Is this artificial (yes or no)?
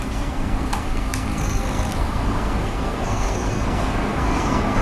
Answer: yes